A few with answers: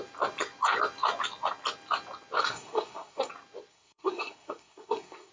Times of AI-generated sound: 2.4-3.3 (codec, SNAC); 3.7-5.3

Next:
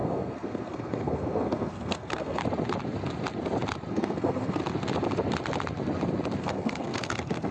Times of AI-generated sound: 0.0-2.4 (codec, SNAC); 3.9-4.6; 6.4-7.5

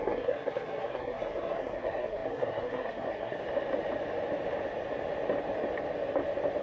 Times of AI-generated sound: 0.0-3.4 (codec, SNAC)

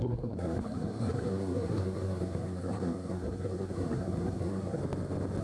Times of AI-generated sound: 0.0-4.8 (codec, SNAC)

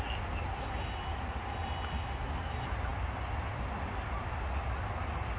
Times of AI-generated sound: none

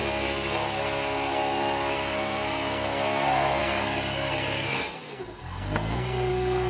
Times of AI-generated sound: 0.0-6.7 (codec, SNAC)

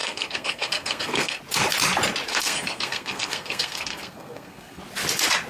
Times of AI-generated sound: 0.0-1.4 (codec, SNAC); 2.3-4.8

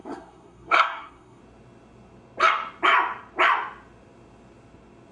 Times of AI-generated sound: 0.0-1.4 (codec, SNAC)